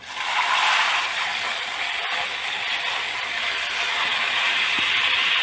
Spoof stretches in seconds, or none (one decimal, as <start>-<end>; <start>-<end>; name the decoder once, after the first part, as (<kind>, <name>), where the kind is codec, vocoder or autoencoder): 0.0-1.3 (vocoder, BigVGAN v2); 4.5-5.4